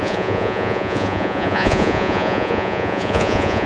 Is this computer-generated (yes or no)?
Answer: yes